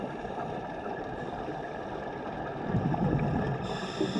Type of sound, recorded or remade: recorded